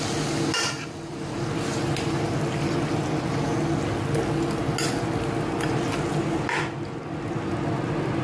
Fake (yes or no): no